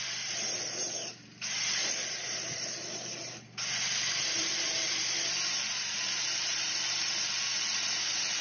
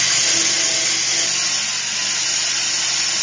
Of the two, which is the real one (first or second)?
second